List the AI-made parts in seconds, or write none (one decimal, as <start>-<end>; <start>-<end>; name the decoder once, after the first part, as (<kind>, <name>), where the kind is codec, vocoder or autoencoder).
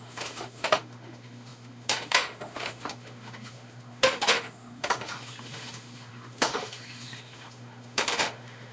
0.0-8.7 (autoencoder, DAC-VAE)